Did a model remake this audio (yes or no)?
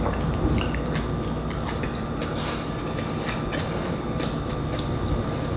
no